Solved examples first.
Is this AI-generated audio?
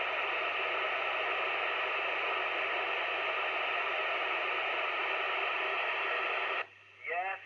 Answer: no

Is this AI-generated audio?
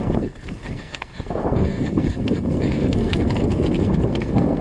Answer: yes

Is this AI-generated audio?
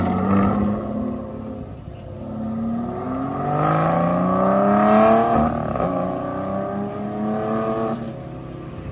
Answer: no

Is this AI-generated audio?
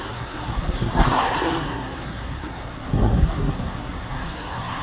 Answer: yes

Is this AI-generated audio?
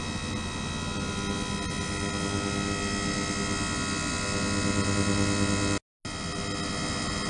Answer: no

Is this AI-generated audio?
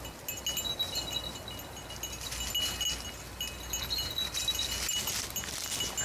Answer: no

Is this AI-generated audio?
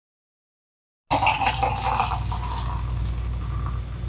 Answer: no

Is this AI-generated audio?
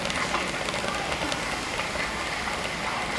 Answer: no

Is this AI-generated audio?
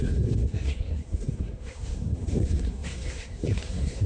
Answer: yes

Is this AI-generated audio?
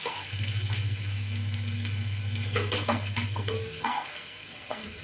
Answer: yes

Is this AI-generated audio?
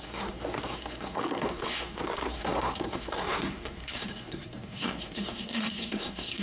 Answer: yes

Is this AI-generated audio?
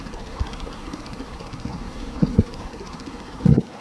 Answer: yes